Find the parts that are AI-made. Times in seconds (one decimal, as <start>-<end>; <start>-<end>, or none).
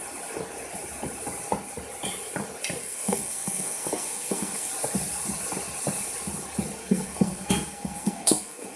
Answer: 2.8-4.7; 6.8-8.8